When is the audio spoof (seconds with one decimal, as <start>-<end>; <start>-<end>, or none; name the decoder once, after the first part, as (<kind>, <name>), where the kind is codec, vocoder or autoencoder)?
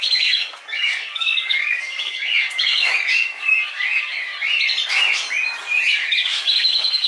0.0-4.3 (codec, DAC); 5.9-7.1